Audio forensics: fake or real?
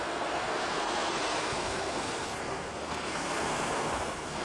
fake